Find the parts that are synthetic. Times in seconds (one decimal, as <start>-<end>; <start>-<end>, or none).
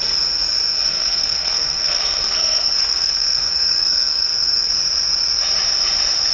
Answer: 0.9-4.7